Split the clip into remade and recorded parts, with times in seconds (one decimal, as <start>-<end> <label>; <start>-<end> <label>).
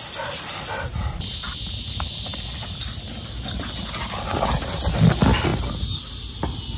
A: 0.0-6.8 recorded